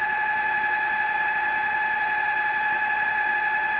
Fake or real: fake